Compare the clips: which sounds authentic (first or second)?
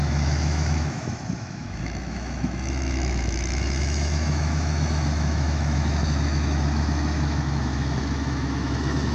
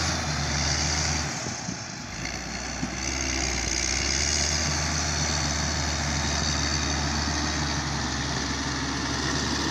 second